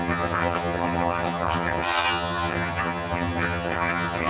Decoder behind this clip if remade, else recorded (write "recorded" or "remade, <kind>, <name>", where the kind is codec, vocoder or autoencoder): remade, vocoder, HiFi-GAN